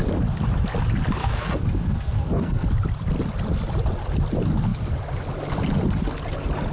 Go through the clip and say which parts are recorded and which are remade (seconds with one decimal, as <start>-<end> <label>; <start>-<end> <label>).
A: 0.0-1.2 recorded; 1.2-2.7 remade; 2.7-6.7 recorded